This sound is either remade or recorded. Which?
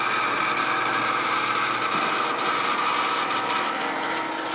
recorded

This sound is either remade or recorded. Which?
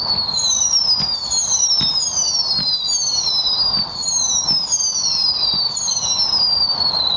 recorded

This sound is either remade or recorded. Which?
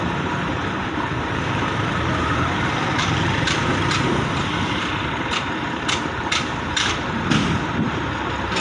remade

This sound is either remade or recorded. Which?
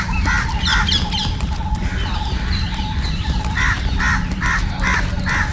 remade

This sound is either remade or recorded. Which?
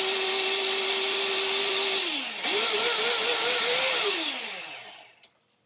remade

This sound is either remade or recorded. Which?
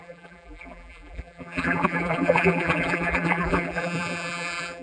remade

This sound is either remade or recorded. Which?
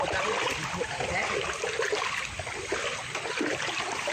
recorded